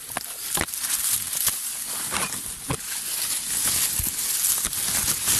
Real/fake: real